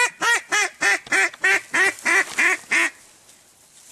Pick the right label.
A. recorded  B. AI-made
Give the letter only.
A